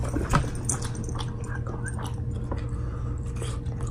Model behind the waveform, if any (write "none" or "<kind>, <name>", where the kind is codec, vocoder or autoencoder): none